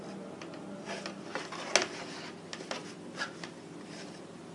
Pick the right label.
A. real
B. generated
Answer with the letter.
A